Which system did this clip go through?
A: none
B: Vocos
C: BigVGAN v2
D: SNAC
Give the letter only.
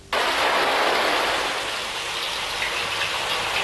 A